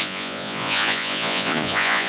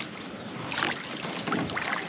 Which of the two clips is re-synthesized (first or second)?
first